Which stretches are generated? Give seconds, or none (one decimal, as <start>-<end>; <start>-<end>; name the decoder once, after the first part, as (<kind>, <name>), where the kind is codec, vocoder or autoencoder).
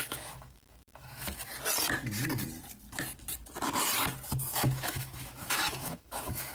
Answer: 0.0-1.5 (autoencoder, DAC-VAE); 4.5-6.5